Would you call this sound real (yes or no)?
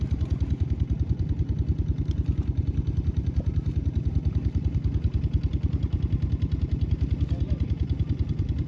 yes